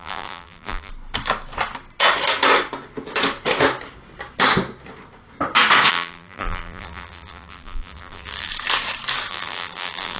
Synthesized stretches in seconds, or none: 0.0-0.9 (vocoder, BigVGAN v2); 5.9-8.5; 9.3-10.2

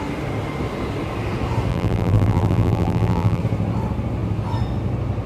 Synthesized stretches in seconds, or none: 1.7-3.4 (vocoder, BigVGAN v2)

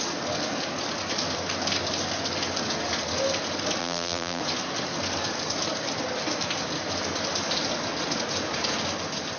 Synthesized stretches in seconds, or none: 3.8-4.4 (vocoder, BigVGAN v2)

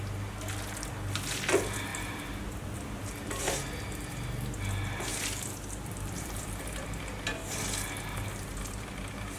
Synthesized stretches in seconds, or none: 1.9-3.4 (vocoder, BigVGAN v2); 5.1-7.3

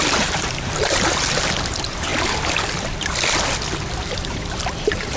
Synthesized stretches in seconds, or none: 0.0-2.1 (vocoder, BigVGAN v2); 4.1-5.2